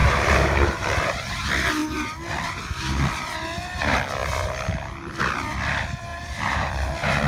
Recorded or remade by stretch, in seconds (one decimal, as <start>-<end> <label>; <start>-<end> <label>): 0.0-1.1 remade; 1.1-6.1 recorded; 6.1-6.7 remade; 6.7-7.3 recorded